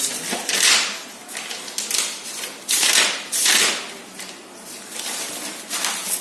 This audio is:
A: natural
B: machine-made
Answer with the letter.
A